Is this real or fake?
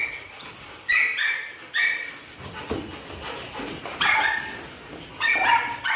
fake